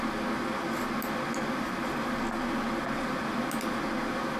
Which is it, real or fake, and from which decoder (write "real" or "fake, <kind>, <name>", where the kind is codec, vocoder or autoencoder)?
real